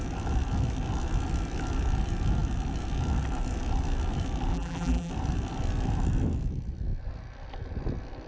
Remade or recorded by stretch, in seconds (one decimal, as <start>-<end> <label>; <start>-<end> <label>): 0.0-4.5 recorded; 4.5-5.1 remade; 5.1-8.3 recorded